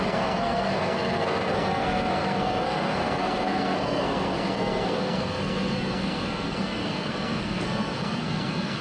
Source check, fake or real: fake